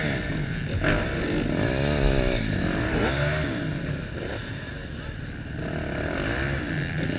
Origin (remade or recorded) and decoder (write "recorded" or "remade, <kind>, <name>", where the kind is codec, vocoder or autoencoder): recorded